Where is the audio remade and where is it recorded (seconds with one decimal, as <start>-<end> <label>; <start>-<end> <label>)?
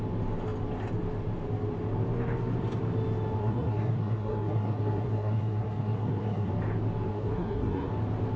0.0-3.4 recorded; 3.4-6.5 remade; 6.5-7.1 recorded; 7.1-7.9 remade; 7.9-8.4 recorded